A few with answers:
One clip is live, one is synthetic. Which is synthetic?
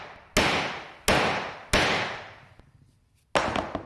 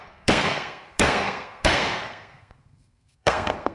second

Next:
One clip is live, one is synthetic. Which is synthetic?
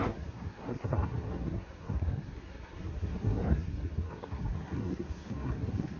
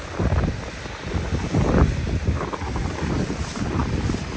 first